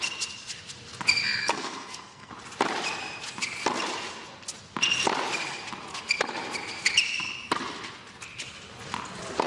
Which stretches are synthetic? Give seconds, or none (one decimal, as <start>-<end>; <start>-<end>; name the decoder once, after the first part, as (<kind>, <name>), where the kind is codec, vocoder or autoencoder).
1.4-2.3 (codec, SNAC)